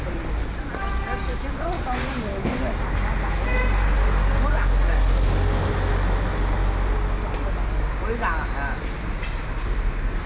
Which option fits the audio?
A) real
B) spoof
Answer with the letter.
A